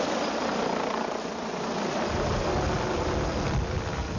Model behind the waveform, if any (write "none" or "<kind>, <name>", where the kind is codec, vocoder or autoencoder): none